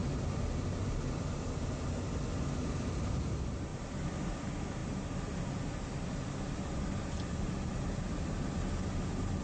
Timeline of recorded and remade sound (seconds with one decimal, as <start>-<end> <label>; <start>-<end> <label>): 0.0-9.4 recorded